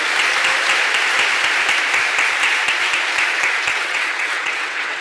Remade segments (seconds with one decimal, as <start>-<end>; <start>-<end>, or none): 3.7-5.0